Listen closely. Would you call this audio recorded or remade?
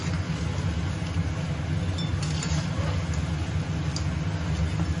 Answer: recorded